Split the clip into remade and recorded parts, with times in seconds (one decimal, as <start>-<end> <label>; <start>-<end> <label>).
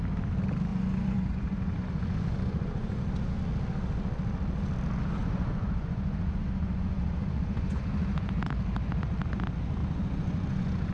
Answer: 0.0-0.7 recorded; 0.7-3.0 remade; 3.0-5.2 recorded; 5.2-8.3 remade; 8.3-9.8 recorded; 9.8-10.9 remade